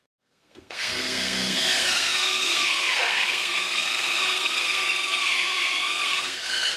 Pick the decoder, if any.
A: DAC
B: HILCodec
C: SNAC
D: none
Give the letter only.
C